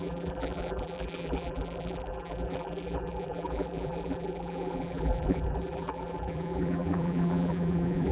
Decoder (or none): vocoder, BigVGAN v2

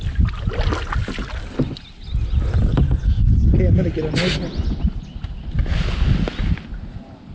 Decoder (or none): none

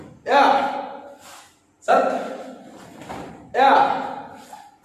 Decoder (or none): none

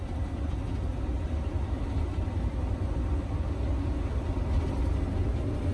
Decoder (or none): none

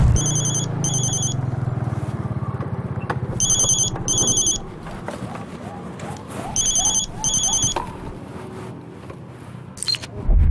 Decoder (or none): none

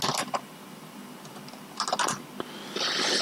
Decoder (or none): none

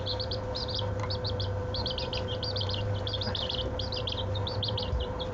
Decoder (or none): vocoder, BigVGAN v2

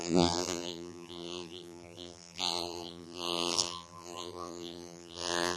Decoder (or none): vocoder, BigVGAN v2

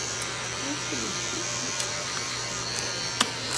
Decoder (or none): vocoder, BigVGAN v2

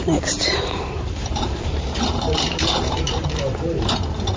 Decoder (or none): vocoder, BigVGAN v2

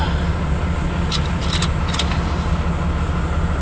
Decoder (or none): none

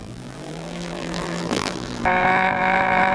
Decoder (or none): vocoder, BigVGAN v2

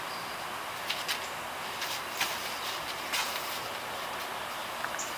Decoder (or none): none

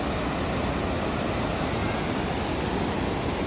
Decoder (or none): none